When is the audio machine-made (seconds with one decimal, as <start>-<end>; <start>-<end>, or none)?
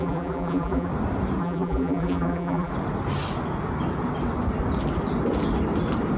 0.0-0.9; 1.4-2.7